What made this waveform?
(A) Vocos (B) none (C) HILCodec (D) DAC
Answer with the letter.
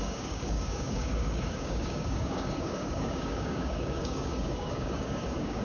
D